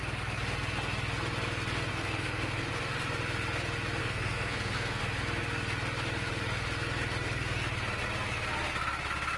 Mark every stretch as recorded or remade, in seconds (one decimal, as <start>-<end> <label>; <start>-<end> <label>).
0.0-1.9 recorded; 1.9-2.7 remade; 2.7-4.0 recorded; 4.0-5.0 remade; 5.0-9.4 recorded